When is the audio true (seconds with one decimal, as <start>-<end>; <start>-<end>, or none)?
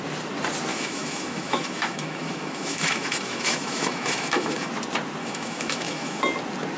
0.0-0.7; 4.7-5.2; 6.2-6.8